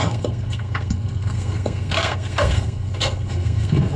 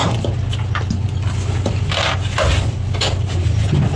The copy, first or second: first